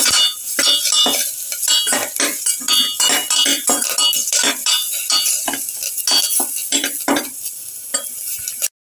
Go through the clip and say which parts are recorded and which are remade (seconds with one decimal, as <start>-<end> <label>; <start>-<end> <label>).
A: 0.0-8.9 recorded